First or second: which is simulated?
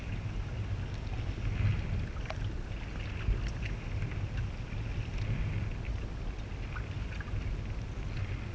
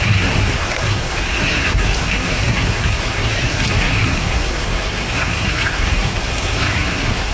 second